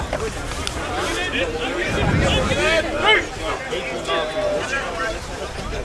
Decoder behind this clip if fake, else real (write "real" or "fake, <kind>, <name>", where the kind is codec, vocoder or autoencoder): real